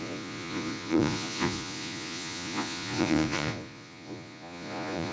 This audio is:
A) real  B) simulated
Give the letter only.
B